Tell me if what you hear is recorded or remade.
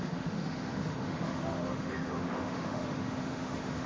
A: remade